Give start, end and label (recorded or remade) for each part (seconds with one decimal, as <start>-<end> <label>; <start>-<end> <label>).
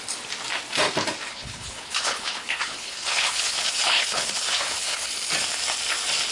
0.0-1.3 recorded; 1.3-5.1 remade; 5.1-6.3 recorded